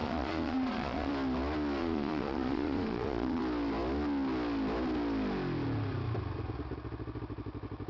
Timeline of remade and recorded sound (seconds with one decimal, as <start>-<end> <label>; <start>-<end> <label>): 0.0-1.1 remade; 1.1-1.8 recorded; 1.8-3.4 remade; 3.4-7.9 recorded